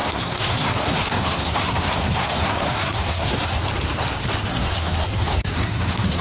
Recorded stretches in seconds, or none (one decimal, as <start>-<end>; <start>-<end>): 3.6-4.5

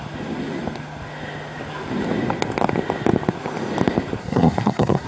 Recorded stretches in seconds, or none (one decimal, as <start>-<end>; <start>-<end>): 0.0-4.2

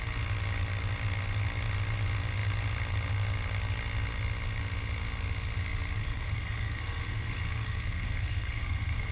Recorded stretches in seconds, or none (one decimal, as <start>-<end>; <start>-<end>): 0.0-6.0